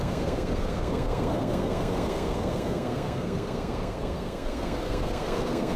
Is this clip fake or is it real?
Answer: fake